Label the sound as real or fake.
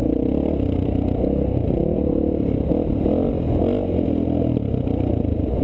real